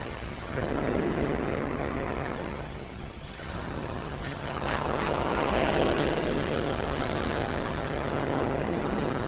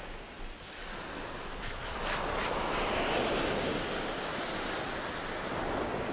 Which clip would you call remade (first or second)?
first